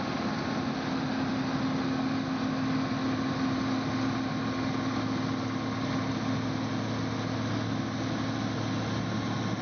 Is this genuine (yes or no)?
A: yes